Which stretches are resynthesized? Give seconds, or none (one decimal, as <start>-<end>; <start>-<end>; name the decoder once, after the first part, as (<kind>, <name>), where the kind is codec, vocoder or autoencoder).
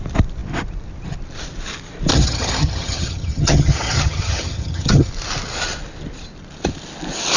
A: 2.1-5.1 (vocoder, HiFi-GAN)